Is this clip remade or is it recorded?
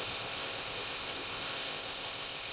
remade